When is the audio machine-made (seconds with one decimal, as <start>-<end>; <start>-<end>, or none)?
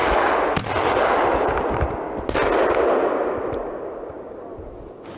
none